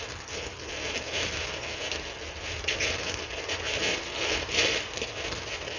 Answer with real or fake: real